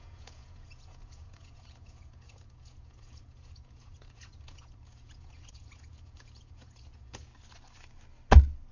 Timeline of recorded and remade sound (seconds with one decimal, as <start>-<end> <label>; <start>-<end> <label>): 0.0-7.3 remade; 7.3-8.7 recorded